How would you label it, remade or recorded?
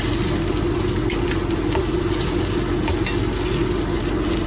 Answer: recorded